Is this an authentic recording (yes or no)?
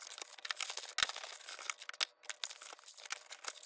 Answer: yes